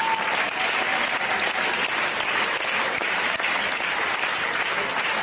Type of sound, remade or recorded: recorded